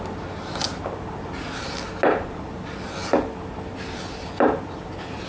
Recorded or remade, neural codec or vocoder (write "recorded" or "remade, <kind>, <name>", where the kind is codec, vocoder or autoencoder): recorded